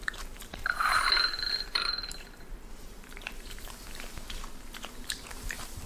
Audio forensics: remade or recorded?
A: remade